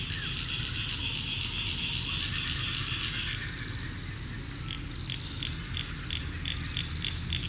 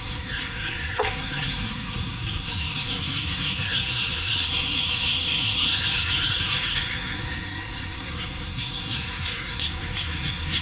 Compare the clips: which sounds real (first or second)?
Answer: first